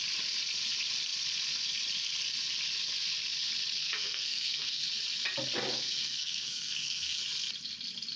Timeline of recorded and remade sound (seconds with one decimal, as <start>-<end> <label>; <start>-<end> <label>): 0.0-3.8 recorded; 3.8-4.9 remade; 4.9-5.7 recorded; 5.7-7.2 remade; 7.2-8.2 recorded